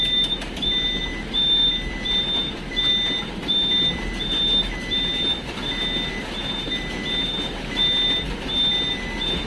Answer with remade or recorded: recorded